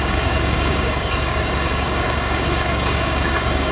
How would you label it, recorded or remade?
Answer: remade